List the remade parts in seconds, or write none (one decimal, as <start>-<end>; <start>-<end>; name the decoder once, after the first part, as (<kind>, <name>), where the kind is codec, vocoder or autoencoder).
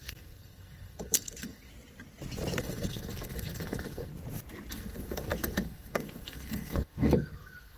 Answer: 0.0-1.7 (codec, SNAC); 2.6-4.1; 4.7-7.8